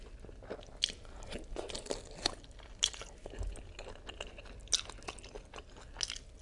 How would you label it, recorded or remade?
recorded